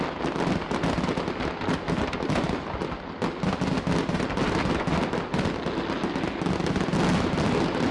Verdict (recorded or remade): recorded